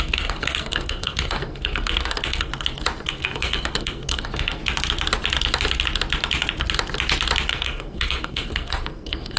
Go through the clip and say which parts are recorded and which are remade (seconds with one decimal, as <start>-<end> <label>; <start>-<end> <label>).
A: 0.0-2.5 remade; 2.5-3.1 recorded; 3.1-4.6 remade; 4.6-7.5 recorded; 7.5-9.4 remade

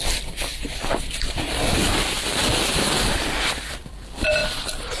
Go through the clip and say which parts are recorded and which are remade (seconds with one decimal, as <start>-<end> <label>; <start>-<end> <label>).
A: 0.0-1.8 remade; 1.8-2.7 recorded; 2.7-4.4 remade; 4.4-5.0 recorded

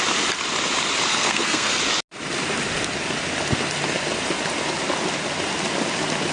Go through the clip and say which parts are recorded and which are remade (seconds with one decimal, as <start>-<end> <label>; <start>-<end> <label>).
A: 0.0-1.1 recorded; 1.1-1.8 remade; 1.8-6.3 recorded

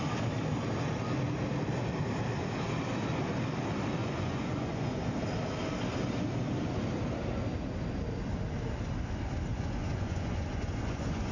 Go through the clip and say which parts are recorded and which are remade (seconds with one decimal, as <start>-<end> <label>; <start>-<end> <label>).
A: 0.0-4.0 recorded; 4.0-5.0 remade; 5.0-9.5 recorded; 9.5-11.3 remade

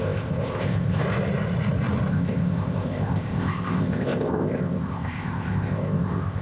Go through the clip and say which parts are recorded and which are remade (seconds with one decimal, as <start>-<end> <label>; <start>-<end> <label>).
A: 0.0-1.0 remade; 1.0-2.1 recorded; 2.1-6.4 remade

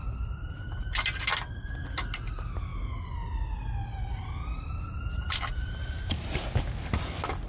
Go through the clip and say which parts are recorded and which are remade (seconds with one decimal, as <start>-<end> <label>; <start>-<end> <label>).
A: 0.0-7.5 recorded